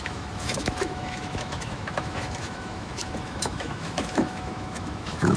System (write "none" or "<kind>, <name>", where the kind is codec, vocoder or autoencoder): autoencoder, DAC-VAE